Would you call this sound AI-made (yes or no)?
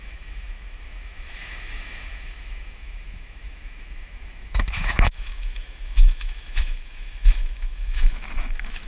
yes